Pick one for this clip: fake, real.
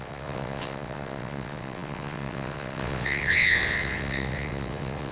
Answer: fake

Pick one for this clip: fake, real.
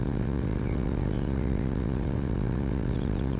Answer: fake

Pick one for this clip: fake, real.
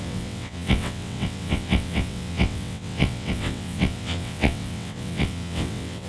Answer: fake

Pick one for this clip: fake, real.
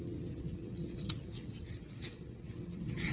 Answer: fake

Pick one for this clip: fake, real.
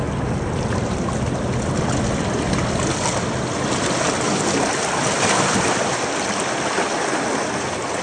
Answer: real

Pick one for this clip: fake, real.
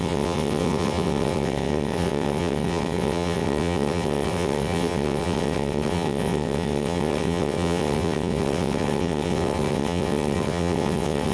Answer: fake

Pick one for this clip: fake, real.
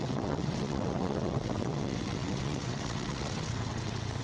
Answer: fake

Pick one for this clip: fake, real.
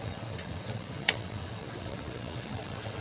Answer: fake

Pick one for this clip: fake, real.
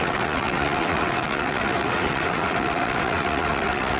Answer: fake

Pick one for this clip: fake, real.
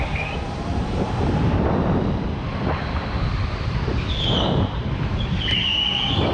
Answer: real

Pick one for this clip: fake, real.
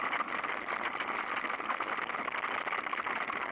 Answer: real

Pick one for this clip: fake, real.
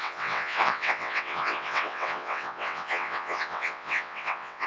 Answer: fake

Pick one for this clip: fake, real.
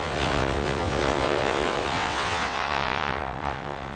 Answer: fake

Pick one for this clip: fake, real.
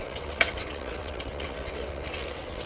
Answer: fake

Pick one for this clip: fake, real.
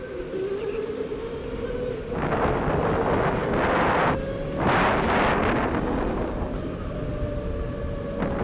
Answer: real